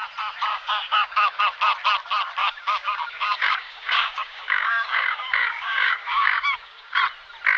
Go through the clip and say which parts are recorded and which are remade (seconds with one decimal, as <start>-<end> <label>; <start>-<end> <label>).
0.0-0.5 recorded; 0.5-1.4 remade; 1.4-2.4 recorded; 2.4-7.0 remade; 7.0-7.6 recorded